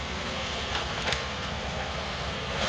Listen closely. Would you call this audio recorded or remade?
remade